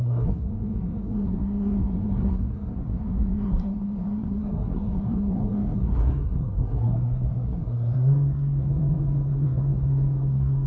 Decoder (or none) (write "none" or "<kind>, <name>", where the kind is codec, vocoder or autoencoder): codec, SNAC